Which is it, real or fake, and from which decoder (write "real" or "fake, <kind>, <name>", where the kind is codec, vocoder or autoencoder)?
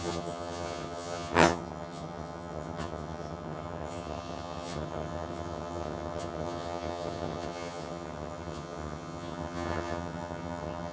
fake, vocoder, HiFi-GAN